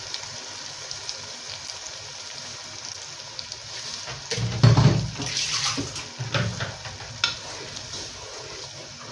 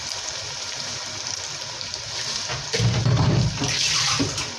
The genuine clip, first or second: first